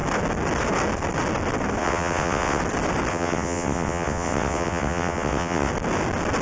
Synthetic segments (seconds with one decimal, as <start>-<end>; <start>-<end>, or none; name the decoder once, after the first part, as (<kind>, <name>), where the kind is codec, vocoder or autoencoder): 1.8-2.6 (vocoder, WaveNeXt); 3.1-5.7